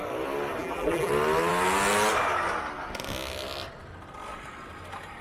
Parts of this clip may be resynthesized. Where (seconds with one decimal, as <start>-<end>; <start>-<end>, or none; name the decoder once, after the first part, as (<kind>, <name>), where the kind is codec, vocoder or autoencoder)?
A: 0.6-1.1 (vocoder, BigVGAN v2)